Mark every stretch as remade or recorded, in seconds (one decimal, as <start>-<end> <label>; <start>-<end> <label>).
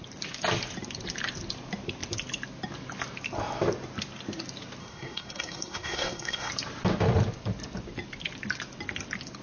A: 0.0-4.8 recorded; 4.8-6.5 remade; 6.5-9.4 recorded